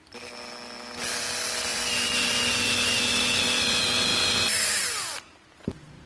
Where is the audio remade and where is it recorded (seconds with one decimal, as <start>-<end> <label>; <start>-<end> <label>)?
0.0-1.7 recorded; 1.7-2.3 remade; 2.3-6.1 recorded